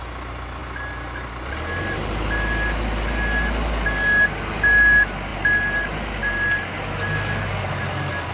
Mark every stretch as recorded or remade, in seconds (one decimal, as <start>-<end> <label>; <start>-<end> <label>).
0.0-8.3 recorded